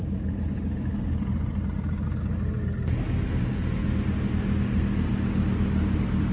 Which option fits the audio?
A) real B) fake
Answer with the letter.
A